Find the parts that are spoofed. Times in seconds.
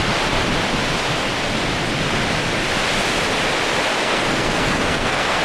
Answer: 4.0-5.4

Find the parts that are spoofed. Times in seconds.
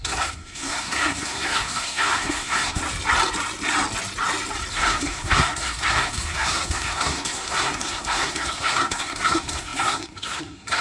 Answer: 0.0-2.8; 4.7-10.8